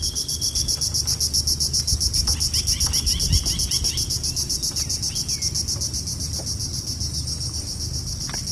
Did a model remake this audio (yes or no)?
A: no